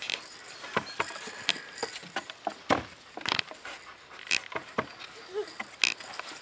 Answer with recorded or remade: recorded